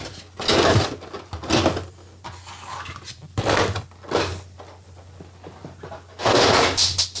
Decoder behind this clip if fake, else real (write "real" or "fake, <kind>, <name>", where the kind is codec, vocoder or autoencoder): real